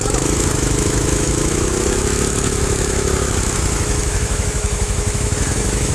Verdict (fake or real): fake